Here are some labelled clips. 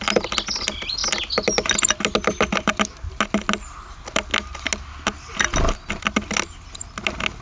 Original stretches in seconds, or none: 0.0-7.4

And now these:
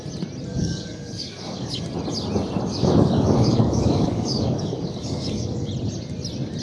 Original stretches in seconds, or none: 0.0-0.5; 1.8-2.7; 5.7-6.6

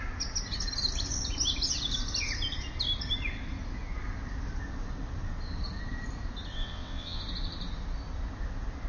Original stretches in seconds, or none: 0.0-6.5; 7.2-8.9

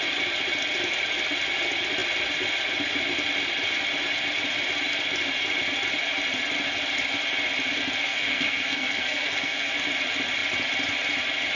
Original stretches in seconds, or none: 0.0-8.1; 9.7-11.6